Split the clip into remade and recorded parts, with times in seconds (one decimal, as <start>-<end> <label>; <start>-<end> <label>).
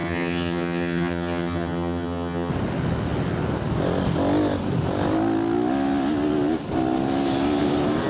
0.0-2.5 remade; 2.5-8.1 recorded